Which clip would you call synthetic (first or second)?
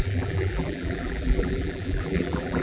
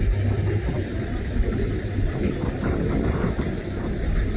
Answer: first